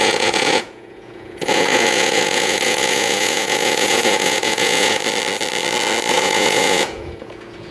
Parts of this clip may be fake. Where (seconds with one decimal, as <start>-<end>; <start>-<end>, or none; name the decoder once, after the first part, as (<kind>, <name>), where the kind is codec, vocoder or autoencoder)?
0.0-5.0 (vocoder, Vocos); 6.1-7.7